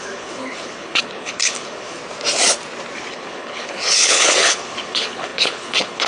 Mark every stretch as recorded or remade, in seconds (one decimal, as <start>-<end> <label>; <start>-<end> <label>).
0.0-2.0 remade; 2.0-3.1 recorded; 3.1-6.1 remade